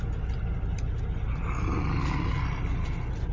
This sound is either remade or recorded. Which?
recorded